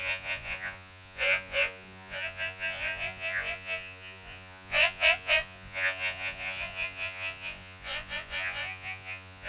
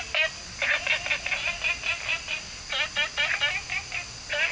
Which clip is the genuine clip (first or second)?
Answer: second